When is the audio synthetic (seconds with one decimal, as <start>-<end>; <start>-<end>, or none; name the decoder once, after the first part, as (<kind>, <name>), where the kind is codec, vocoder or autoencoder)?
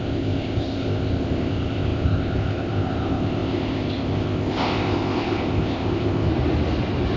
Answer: 0.0-6.3 (codec, ZipCodec)